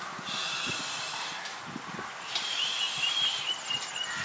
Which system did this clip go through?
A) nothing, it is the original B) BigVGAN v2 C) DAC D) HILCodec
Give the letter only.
B